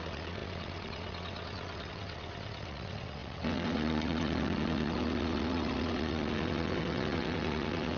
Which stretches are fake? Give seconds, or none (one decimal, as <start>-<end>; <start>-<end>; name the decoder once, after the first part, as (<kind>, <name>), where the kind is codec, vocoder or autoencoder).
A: 0.0-8.0 (vocoder, WaveNeXt)